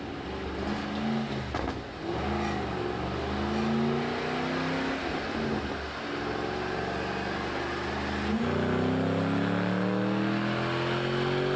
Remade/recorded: recorded